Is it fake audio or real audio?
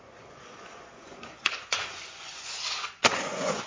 fake